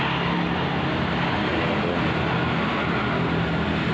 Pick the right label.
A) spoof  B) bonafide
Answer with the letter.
B